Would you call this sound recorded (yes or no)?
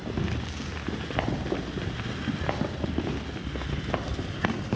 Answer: yes